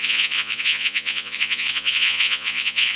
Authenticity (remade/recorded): remade